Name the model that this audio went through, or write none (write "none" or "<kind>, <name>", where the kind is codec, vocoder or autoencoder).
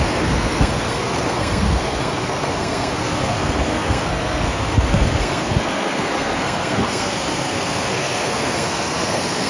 codec, SNAC